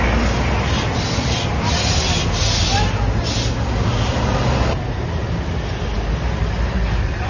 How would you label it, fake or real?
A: real